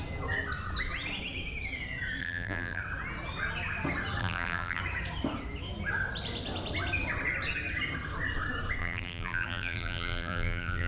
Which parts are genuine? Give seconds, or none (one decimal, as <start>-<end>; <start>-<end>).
0.0-2.2; 2.8-4.2; 4.8-8.8